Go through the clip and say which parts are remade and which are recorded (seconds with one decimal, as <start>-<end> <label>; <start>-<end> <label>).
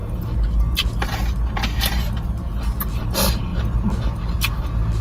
0.0-5.0 recorded